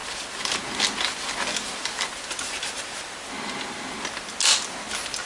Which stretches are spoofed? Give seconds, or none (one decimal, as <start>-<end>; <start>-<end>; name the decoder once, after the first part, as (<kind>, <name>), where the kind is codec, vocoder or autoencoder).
none